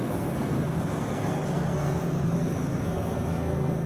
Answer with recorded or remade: remade